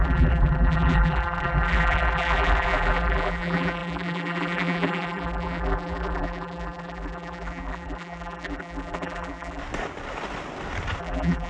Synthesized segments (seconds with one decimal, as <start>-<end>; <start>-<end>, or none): 0.0-9.6; 11.0-11.5